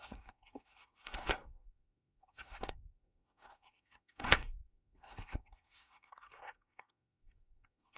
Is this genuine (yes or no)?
no